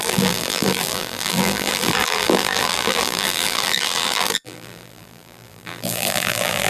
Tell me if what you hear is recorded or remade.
remade